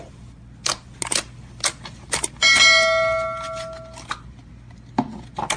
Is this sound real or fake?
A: real